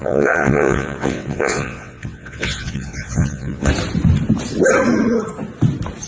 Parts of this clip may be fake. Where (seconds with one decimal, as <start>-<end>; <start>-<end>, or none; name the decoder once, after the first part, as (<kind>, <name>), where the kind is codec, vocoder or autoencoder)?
0.0-3.7 (vocoder, WaveNeXt)